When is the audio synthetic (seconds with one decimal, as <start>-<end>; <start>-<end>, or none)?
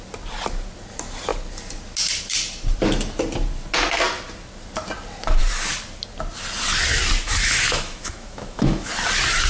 7.2-8.9